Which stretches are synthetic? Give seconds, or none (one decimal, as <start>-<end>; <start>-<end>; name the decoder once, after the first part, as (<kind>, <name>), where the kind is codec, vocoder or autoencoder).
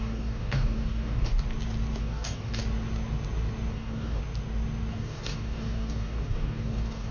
0.0-1.3 (codec, DAC); 2.0-2.6; 3.7-4.2; 4.9-7.1